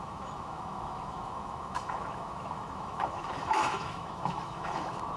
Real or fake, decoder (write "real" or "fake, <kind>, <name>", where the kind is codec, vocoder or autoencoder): fake, autoencoder, DAC-VAE